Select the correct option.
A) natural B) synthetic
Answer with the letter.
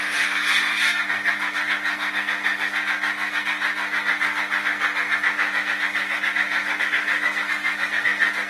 B